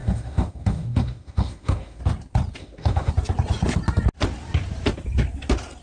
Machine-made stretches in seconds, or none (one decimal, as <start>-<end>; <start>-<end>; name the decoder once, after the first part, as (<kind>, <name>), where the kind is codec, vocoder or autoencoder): 0.0-2.0 (autoencoder, DAC-VAE); 2.6-3.1